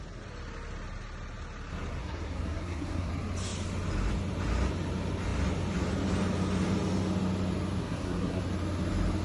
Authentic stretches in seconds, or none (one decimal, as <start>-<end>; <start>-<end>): 0.0-2.0; 3.1-7.8; 8.4-9.2